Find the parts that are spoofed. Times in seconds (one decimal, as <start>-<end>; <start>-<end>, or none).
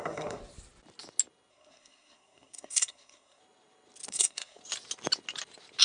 0.0-0.4; 1.5-3.4; 4.1-4.6